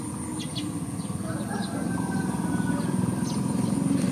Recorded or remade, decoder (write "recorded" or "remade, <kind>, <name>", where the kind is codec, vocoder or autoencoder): recorded